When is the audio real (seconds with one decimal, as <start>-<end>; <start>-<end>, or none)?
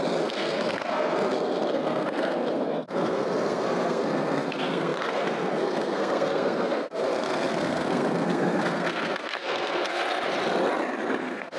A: 10.0-11.2